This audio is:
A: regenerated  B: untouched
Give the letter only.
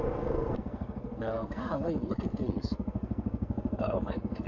A